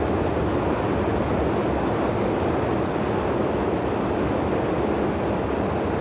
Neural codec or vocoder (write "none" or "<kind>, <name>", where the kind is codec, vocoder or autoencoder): none